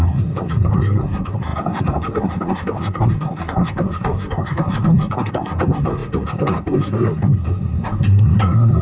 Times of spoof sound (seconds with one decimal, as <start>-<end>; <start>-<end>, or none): 0.0-8.8